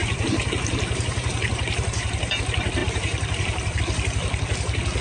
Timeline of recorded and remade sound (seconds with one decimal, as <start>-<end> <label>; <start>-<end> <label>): 0.0-2.4 remade; 2.4-2.8 recorded; 2.8-3.8 remade; 3.8-5.0 recorded